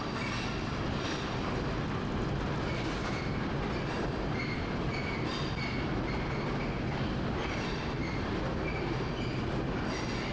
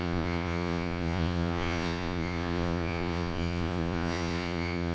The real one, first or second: first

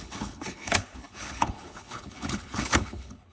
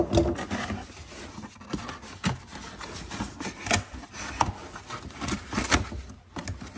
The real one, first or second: second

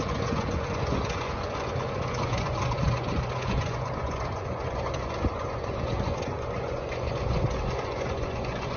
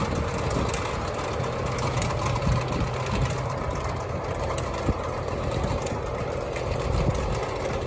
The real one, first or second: second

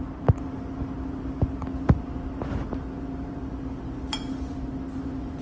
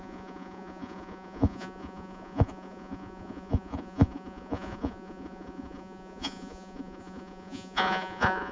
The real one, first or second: first